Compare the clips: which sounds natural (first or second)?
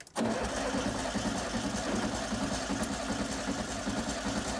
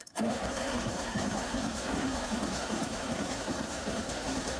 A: first